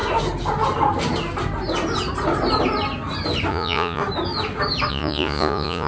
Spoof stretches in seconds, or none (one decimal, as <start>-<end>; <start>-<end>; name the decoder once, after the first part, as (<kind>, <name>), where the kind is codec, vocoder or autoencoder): 3.5-4.0 (vocoder, Vocos); 4.9-5.9

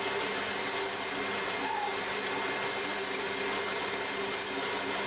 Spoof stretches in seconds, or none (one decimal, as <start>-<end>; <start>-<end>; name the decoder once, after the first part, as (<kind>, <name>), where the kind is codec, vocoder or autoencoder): none

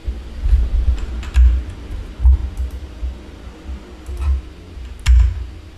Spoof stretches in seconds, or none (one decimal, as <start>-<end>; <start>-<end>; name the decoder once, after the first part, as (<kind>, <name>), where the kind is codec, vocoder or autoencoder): 0.0-1.1 (vocoder, BigVGAN v2)

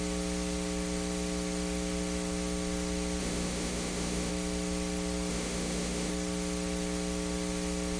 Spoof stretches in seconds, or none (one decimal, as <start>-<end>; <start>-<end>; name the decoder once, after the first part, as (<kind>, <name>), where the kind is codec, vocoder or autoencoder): 3.2-4.3 (autoencoder, DAC-VAE); 5.3-6.1

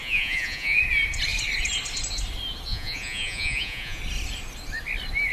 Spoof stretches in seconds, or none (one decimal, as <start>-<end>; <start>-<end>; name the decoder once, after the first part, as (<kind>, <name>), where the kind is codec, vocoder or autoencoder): 0.0-0.8 (vocoder, Vocos); 2.7-4.0

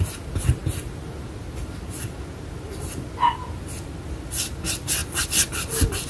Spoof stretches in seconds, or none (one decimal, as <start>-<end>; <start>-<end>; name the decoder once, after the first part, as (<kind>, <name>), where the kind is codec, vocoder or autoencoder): none

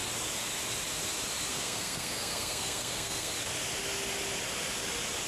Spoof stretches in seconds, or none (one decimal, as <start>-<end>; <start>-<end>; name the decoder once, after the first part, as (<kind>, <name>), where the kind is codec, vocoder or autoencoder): 1.5-3.3 (codec, SNAC)